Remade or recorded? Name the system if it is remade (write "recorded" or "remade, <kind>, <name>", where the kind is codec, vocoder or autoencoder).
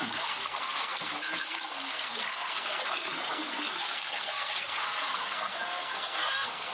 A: remade, codec, SNAC